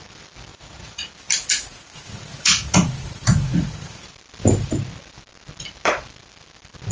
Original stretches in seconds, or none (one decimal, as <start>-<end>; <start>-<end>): 0.0-0.5; 1.1-1.7; 4.0-6.9